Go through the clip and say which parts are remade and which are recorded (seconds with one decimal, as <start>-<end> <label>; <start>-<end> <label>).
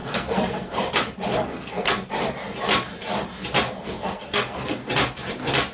0.0-0.8 remade; 0.8-1.4 recorded; 1.4-2.1 remade; 2.1-3.8 recorded; 3.8-4.9 remade; 4.9-5.7 recorded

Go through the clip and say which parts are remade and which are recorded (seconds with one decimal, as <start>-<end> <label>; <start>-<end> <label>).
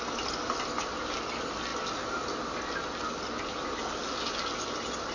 0.0-5.1 recorded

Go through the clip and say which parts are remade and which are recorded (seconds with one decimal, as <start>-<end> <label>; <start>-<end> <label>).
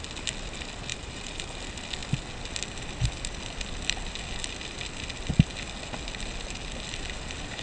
0.0-0.9 recorded; 0.9-1.6 remade; 1.6-7.6 recorded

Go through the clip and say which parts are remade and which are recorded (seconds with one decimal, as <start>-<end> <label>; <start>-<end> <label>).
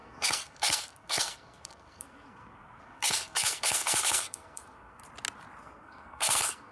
0.0-5.0 remade; 5.0-5.6 recorded; 5.6-6.7 remade